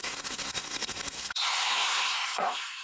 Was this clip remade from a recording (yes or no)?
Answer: yes